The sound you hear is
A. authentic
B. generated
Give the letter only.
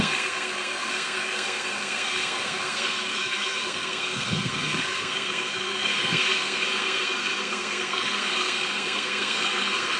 B